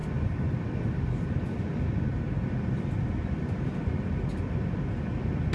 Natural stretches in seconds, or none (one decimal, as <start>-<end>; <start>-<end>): 0.0-5.5